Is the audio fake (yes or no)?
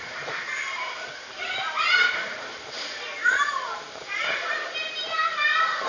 yes